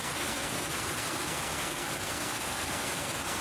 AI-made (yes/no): yes